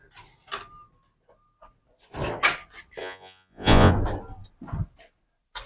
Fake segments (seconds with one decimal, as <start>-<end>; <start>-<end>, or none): 3.0-3.9